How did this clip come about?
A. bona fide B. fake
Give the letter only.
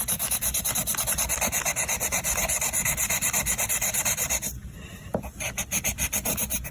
A